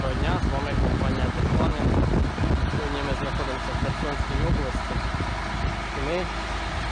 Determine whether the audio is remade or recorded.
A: recorded